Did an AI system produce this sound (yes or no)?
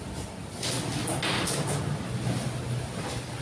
no